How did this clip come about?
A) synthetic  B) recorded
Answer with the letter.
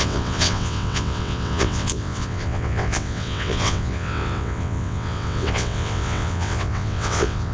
A